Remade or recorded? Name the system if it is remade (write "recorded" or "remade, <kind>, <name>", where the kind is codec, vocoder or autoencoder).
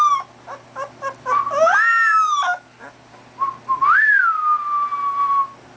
recorded